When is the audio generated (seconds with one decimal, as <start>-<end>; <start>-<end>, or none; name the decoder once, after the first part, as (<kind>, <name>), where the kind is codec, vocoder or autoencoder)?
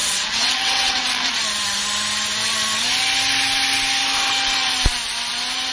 0.0-1.4 (vocoder, WaveNeXt)